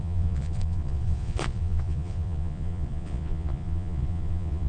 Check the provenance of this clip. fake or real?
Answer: fake